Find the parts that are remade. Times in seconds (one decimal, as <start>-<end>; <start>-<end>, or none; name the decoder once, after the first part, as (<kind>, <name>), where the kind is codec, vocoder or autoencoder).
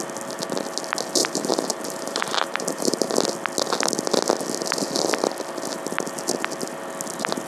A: 1.2-3.1 (vocoder, BigVGAN v2)